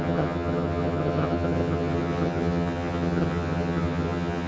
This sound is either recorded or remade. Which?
remade